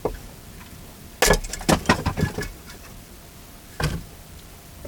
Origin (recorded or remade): recorded